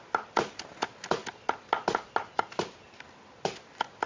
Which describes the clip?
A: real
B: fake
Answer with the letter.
A